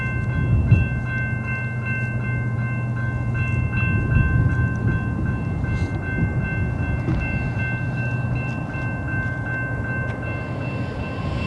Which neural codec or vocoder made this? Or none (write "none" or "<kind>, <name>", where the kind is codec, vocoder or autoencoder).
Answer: none